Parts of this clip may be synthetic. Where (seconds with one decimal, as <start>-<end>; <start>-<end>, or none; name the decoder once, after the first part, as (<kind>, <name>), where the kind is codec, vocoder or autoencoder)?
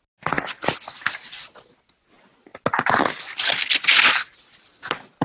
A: none